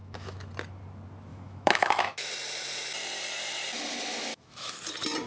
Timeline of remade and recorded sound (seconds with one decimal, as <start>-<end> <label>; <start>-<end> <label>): 0.0-0.5 remade; 0.5-1.3 recorded; 1.3-2.3 remade; 2.3-4.3 recorded; 4.3-4.8 remade; 4.8-5.3 recorded